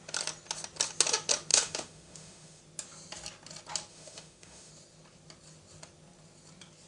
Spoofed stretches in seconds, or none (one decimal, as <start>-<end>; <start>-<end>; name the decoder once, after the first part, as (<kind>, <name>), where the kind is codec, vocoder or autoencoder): 1.5-2.6 (autoencoder, DAC-VAE); 3.9-4.7